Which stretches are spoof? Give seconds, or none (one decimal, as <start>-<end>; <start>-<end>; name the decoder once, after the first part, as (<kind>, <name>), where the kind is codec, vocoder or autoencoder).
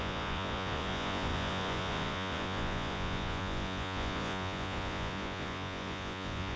0.0-6.6 (vocoder, Vocos)